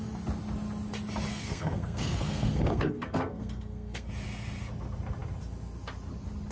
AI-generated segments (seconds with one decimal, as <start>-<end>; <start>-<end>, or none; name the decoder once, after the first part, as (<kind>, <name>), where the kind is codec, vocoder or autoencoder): 1.3-4.1 (codec, SNAC)